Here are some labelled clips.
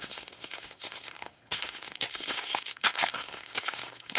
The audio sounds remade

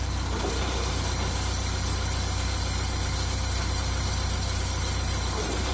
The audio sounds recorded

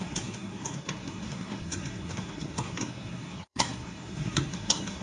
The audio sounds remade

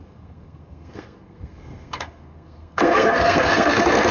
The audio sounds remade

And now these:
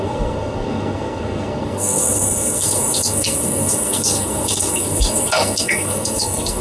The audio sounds remade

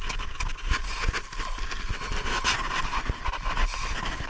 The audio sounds recorded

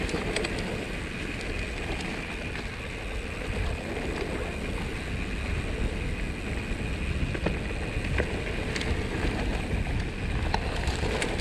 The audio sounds recorded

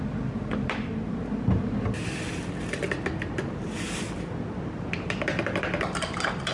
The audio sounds recorded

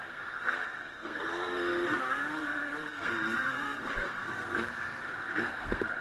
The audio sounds remade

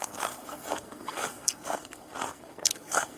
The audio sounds remade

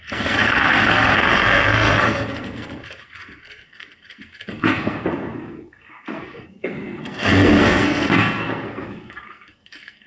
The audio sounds remade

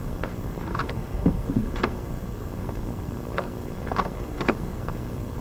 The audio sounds remade